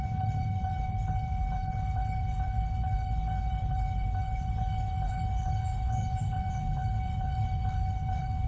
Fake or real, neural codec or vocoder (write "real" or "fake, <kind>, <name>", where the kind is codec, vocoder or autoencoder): fake, codec, HILCodec